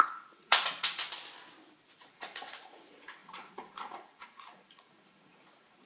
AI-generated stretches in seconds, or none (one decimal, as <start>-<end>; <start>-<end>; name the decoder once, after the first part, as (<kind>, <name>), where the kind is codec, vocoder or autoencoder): 0.0-1.0 (vocoder, Vocos); 2.0-5.9